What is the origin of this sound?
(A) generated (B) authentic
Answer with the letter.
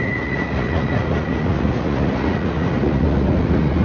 A